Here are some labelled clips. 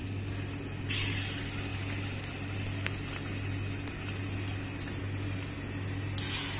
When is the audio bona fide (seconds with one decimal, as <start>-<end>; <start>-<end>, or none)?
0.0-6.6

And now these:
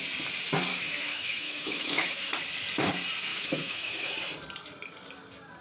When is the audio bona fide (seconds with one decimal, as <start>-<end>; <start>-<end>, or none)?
0.0-0.7; 2.3-3.3; 4.1-5.6

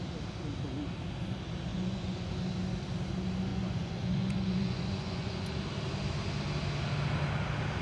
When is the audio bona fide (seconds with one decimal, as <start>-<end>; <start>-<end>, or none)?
0.0-1.7; 2.3-3.5; 5.5-7.8